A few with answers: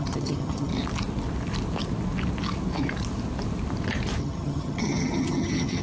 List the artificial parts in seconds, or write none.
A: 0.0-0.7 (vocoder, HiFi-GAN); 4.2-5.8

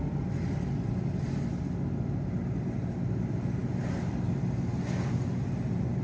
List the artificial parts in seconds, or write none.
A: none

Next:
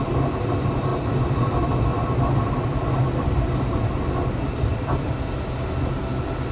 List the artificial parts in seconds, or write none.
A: none